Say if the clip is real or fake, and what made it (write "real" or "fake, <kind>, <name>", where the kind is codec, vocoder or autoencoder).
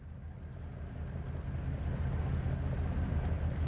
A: real